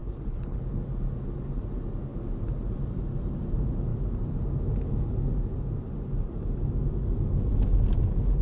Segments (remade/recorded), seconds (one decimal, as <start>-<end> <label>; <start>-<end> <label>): 0.0-0.6 remade; 0.6-8.4 recorded